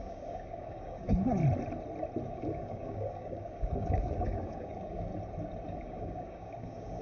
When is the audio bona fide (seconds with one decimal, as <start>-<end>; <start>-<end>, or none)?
1.4-2.2; 5.1-5.7